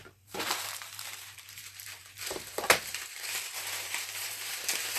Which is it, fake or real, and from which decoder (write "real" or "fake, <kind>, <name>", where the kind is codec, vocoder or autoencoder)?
fake, vocoder, BigVGAN v2